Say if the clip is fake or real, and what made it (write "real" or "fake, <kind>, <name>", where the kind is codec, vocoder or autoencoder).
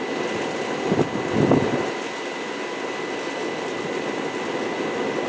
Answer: real